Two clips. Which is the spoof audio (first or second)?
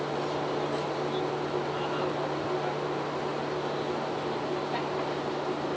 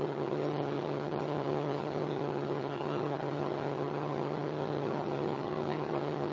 second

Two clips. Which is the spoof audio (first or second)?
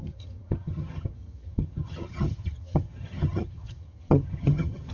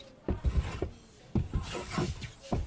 first